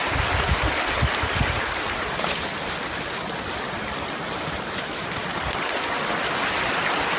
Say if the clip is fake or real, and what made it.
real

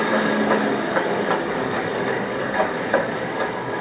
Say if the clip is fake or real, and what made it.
fake, codec, DAC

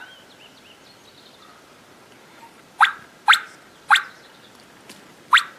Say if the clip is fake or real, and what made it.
real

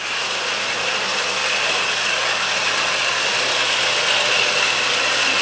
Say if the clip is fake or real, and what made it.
real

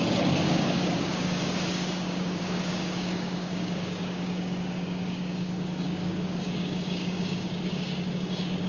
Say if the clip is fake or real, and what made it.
fake, codec, DAC